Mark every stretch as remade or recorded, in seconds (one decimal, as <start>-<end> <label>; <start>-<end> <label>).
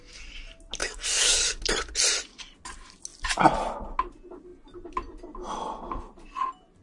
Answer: 0.0-0.8 recorded; 0.8-1.6 remade; 1.6-6.8 recorded